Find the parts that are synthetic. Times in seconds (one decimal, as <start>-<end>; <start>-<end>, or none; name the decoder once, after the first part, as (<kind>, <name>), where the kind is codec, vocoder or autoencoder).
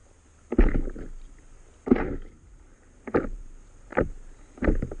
2.3-3.9 (vocoder, BigVGAN v2)